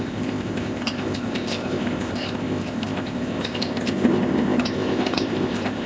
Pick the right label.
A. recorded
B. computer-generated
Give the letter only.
B